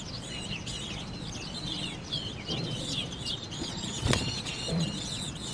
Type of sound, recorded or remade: remade